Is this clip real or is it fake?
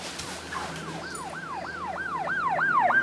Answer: real